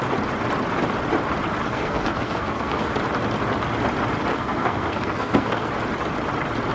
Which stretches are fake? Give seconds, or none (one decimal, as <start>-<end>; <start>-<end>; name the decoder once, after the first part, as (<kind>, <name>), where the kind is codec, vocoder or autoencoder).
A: 1.7-2.9 (codec, SNAC); 4.3-5.7